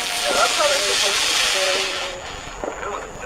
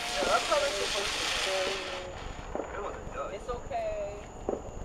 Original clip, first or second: second